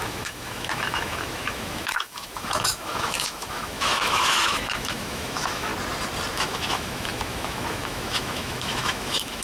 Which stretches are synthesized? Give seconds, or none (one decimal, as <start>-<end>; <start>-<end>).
0.0-5.7; 6.3-9.4